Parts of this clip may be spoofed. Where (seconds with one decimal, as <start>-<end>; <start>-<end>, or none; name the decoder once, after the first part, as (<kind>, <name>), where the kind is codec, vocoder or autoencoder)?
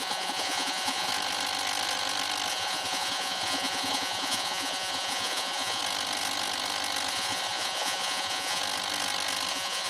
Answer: 0.0-1.1 (vocoder, Vocos); 2.5-5.8; 7.1-8.6; 9.5-9.9